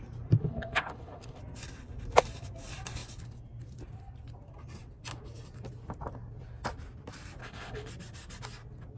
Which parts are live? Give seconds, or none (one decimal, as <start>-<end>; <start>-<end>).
0.0-0.4; 1.4-7.4; 7.9-9.0